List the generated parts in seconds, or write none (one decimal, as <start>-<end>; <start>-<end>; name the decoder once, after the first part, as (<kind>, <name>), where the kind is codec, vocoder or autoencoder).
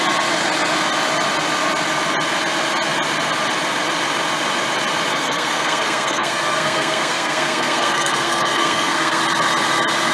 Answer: 5.1-9.2 (codec, SNAC)